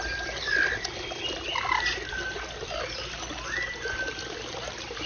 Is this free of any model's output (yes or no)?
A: yes